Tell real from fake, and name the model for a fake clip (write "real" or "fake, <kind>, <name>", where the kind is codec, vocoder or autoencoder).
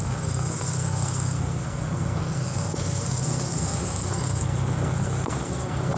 fake, codec, SNAC